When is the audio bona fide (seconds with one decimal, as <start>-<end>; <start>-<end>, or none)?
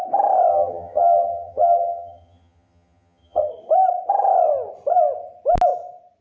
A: 0.0-0.5; 3.5-6.2